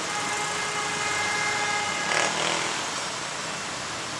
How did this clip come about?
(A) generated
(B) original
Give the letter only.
B